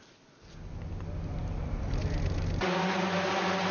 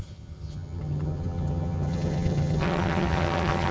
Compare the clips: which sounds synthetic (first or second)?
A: second